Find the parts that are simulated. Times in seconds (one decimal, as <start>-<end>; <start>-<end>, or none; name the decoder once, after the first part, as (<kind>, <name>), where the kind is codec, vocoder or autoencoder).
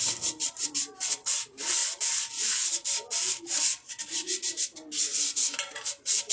none